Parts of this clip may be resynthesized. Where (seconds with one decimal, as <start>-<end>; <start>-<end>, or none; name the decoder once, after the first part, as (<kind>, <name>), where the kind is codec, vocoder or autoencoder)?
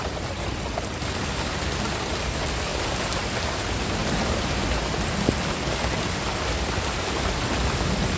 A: 2.7-3.6 (vocoder, BigVGAN v2); 4.0-4.5